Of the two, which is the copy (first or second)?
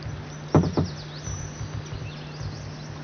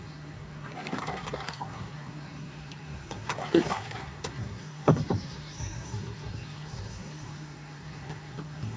second